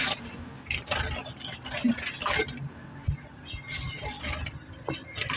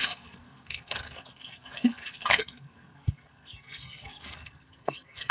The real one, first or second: first